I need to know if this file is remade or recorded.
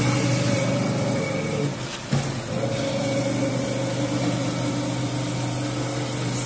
recorded